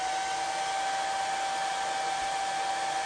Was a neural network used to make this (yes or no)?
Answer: no